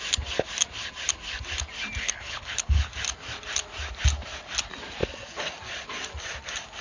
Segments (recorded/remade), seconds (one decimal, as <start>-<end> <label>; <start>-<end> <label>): 0.0-2.0 recorded; 2.0-2.9 remade; 2.9-6.8 recorded